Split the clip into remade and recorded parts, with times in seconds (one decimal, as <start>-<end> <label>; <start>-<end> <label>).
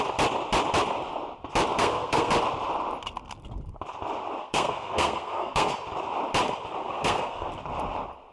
0.0-1.8 recorded; 1.8-2.3 remade; 2.3-4.4 recorded; 4.4-5.7 remade; 5.7-6.8 recorded; 6.8-7.5 remade; 7.5-8.3 recorded